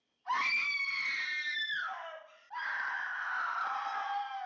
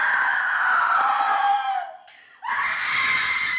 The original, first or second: first